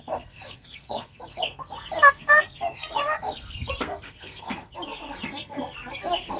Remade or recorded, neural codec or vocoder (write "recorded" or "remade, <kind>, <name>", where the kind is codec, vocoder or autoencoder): remade, codec, SNAC